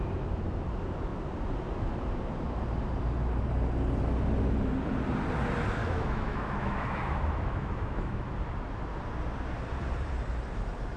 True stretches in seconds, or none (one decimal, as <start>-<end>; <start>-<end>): 0.0-5.8; 8.3-11.0